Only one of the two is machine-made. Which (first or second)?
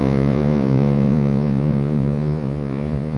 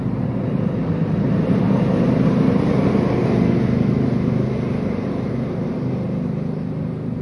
first